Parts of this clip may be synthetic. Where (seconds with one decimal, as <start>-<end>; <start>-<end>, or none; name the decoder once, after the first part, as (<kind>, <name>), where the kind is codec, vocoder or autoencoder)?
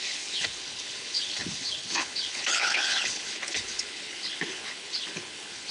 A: 0.0-5.7 (codec, HILCodec)